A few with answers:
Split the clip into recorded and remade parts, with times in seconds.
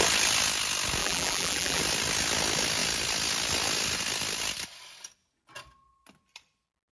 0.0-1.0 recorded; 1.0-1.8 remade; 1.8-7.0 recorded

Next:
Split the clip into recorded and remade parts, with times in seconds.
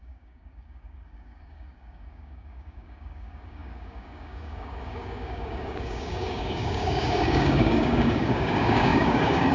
0.0-9.5 remade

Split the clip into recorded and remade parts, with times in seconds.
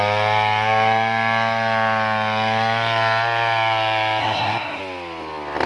0.0-4.2 recorded; 4.2-4.8 remade; 4.8-5.7 recorded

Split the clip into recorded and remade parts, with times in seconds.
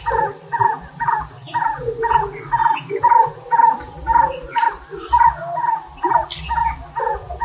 0.0-7.4 recorded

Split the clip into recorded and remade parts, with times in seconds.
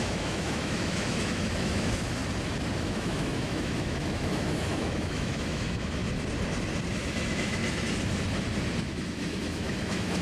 0.0-2.2 remade; 2.2-2.8 recorded; 2.8-6.0 remade; 6.0-6.9 recorded; 6.9-7.6 remade; 7.6-8.8 recorded; 8.8-10.2 remade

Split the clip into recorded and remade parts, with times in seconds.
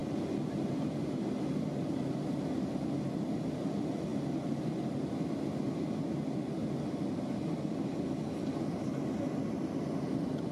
0.0-10.5 recorded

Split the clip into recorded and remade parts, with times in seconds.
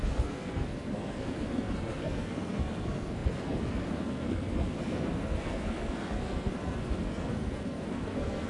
0.0-8.5 remade